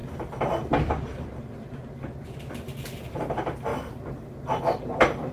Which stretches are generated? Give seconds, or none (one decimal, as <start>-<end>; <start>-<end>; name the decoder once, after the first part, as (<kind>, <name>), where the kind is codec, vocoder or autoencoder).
none